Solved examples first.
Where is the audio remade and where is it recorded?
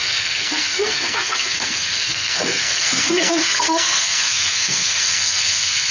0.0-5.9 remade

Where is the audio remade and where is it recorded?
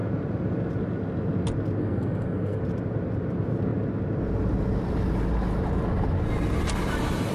0.0-1.8 recorded; 1.8-2.6 remade; 2.6-7.3 recorded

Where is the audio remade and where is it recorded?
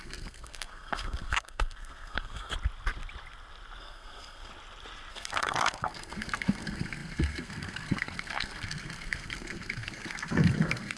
0.0-2.5 remade; 2.5-3.8 recorded; 3.8-4.5 remade; 4.5-5.1 recorded; 5.1-11.0 remade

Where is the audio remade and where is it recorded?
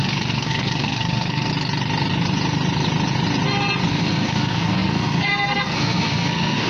0.0-1.5 remade; 1.5-3.9 recorded; 3.9-6.7 remade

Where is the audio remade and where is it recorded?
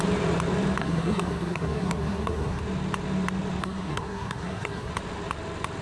0.0-0.8 recorded; 0.8-2.6 remade; 2.6-3.6 recorded; 3.6-4.9 remade; 4.9-5.8 recorded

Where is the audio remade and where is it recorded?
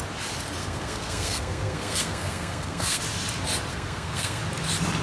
0.0-0.6 recorded; 0.6-3.0 remade; 3.0-3.7 recorded; 3.7-4.4 remade; 4.4-5.0 recorded